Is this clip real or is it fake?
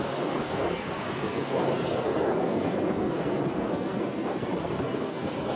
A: fake